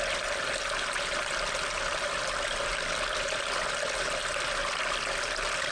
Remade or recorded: remade